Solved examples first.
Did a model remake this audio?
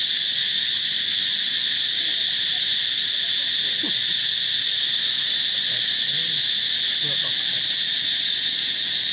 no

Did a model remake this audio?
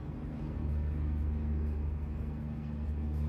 yes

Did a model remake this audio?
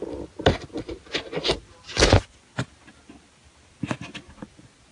no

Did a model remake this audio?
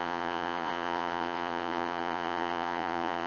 yes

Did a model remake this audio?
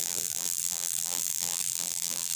yes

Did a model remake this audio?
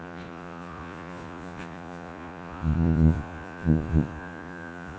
yes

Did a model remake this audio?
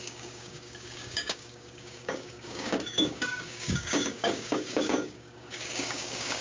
yes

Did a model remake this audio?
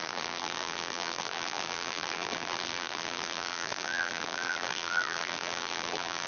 yes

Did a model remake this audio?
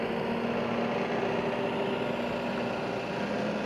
no